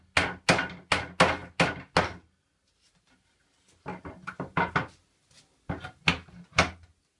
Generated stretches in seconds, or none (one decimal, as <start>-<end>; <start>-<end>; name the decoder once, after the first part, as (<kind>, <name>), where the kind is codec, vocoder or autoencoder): none